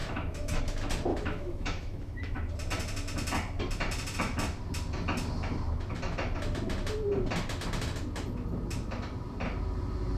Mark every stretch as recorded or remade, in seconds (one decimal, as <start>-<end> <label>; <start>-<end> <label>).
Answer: 0.0-0.6 remade; 0.6-1.1 recorded; 1.1-2.5 remade; 2.5-10.2 recorded